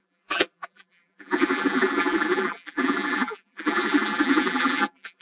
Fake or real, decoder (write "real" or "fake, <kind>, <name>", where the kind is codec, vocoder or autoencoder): fake, vocoder, BigVGAN v2